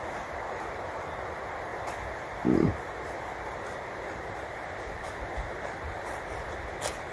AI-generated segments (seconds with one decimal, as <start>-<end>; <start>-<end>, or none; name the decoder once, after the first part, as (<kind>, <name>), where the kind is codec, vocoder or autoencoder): 0.0-1.7 (vocoder, BigVGAN v2); 3.4-7.1

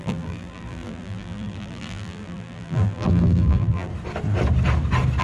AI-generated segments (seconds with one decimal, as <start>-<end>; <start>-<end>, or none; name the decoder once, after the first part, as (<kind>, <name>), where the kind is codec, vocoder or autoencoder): 0.0-3.9 (vocoder, BigVGAN v2)